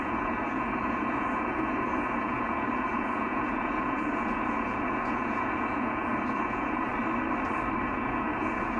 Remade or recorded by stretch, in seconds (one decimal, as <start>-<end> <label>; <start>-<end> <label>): 0.0-6.9 remade; 6.9-7.8 recorded; 7.8-8.8 remade